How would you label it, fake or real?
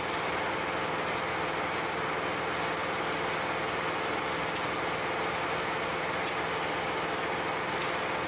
real